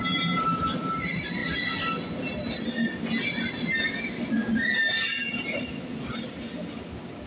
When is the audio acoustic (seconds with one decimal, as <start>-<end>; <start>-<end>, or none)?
1.4-5.4; 5.9-7.3